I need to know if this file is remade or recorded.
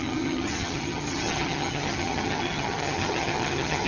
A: remade